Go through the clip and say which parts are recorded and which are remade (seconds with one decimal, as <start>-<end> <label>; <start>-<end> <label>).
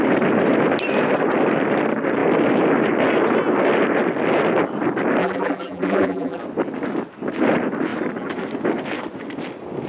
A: 0.0-5.2 recorded; 5.2-6.4 remade; 6.4-9.9 recorded